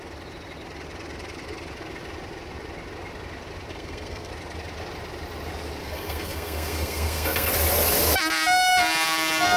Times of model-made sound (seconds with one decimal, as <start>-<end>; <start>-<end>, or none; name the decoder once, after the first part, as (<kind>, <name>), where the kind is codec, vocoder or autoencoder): 3.7-4.3 (codec, SNAC); 5.8-7.5